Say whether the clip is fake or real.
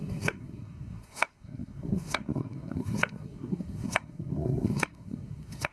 fake